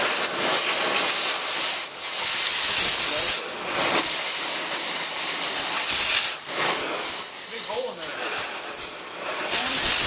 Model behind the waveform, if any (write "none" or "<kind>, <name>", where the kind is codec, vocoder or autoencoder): none